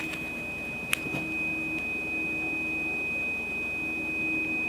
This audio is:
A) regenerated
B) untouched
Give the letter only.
B